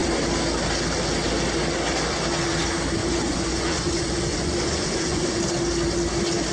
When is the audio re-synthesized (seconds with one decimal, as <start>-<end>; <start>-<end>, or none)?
3.0-5.4